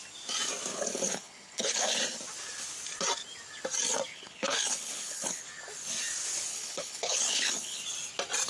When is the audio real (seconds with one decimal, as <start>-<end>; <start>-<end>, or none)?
0.0-0.7; 2.0-4.1; 5.4-6.5; 7.8-8.5